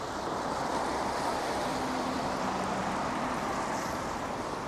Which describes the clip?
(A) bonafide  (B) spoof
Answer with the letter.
A